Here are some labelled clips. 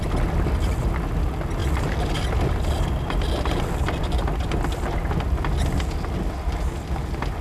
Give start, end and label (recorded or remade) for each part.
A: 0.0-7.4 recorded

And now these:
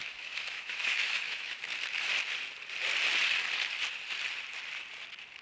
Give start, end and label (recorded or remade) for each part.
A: 0.0-1.6 remade; 1.6-5.4 recorded

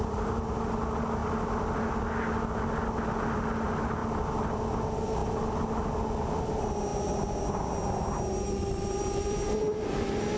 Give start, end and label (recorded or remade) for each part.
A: 0.0-10.4 recorded